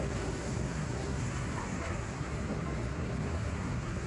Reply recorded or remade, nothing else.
remade